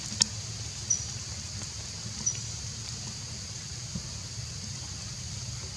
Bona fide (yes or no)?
yes